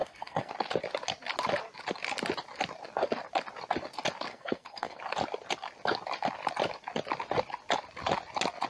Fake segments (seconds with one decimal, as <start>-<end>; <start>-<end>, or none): 0.0-0.5; 4.3-5.0